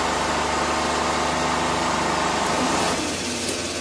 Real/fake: real